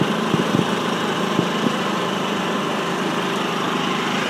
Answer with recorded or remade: remade